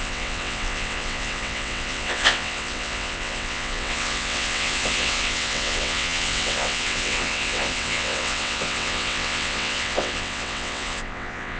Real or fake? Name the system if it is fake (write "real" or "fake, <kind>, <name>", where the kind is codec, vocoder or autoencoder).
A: fake, vocoder, WaveNeXt